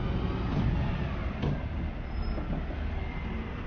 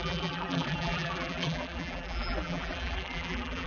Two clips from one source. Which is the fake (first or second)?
second